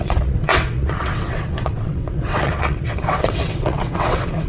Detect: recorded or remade remade